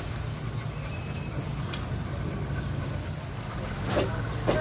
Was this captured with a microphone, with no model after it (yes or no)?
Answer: yes